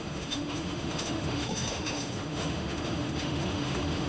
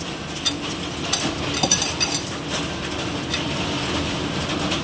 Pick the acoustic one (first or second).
second